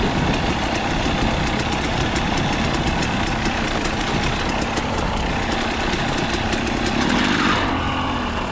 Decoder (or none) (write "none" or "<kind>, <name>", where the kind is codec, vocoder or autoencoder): none